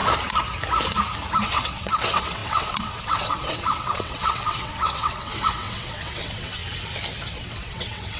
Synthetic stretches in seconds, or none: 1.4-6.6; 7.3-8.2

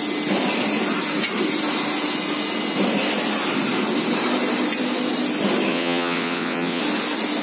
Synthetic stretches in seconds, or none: 5.7-6.8

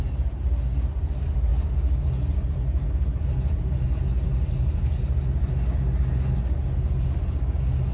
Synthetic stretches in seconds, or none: none

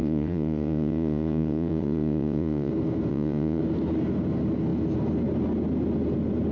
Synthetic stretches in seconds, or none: 0.0-2.7; 3.1-3.6

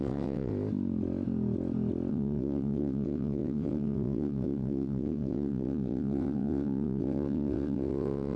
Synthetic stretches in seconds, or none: 0.0-0.5; 2.1-8.4